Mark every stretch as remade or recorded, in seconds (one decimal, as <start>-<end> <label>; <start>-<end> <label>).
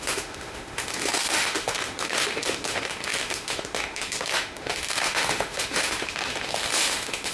0.0-7.3 remade